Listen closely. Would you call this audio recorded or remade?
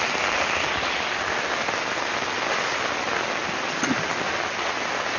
recorded